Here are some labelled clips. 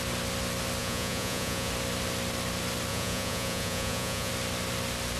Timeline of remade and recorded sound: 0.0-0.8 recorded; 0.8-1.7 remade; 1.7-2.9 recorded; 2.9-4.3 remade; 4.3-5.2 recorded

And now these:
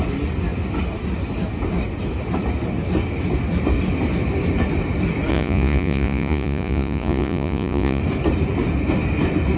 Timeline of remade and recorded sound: 0.0-5.3 recorded; 5.3-8.0 remade; 8.0-9.6 recorded

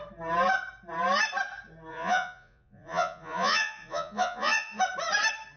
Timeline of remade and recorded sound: 0.0-1.9 recorded; 1.9-4.8 remade; 4.8-5.6 recorded